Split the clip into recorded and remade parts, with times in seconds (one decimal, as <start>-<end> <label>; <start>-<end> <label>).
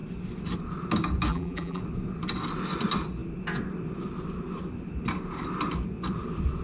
0.0-1.3 recorded; 1.3-1.8 remade; 1.8-6.6 recorded